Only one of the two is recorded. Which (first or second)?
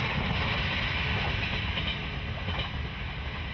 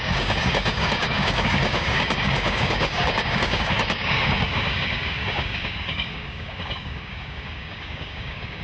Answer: first